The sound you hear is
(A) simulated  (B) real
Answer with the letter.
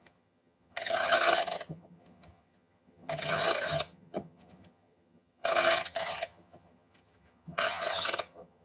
A